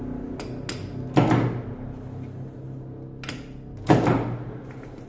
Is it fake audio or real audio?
real